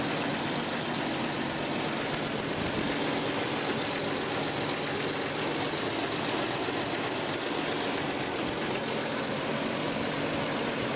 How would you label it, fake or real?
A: real